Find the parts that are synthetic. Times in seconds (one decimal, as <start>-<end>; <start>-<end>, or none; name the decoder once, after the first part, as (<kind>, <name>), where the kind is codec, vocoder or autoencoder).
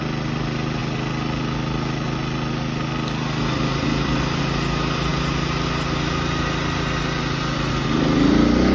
0.0-0.8 (vocoder, BigVGAN v2); 4.4-5.1; 7.7-8.7